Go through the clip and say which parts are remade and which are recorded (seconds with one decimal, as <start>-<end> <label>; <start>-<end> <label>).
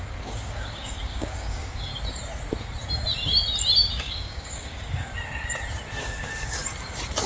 0.0-1.9 remade; 1.9-3.9 recorded; 3.9-5.1 remade; 5.1-6.0 recorded; 6.0-6.6 remade; 6.6-7.3 recorded